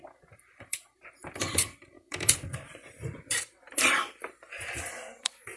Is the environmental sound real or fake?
fake